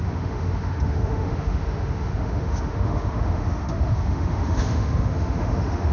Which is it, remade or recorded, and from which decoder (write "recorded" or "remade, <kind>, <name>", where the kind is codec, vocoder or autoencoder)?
remade, autoencoder, DAC-VAE